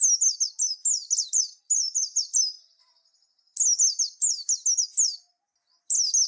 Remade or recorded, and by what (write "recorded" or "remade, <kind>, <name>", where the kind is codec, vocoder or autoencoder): recorded